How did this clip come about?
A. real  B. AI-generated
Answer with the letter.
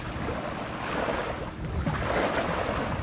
A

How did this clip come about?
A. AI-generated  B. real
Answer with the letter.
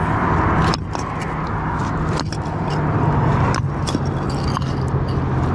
B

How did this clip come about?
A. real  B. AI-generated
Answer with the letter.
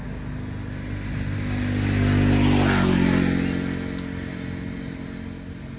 A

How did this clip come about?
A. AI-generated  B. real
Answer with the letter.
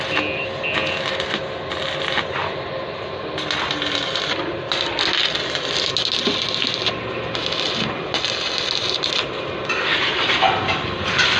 B